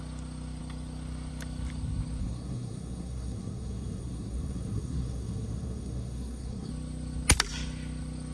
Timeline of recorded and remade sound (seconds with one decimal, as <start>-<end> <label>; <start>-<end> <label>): 0.0-2.2 recorded; 2.2-6.7 remade; 6.7-8.3 recorded